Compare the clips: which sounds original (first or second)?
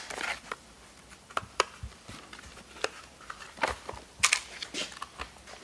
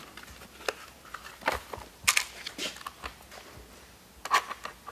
second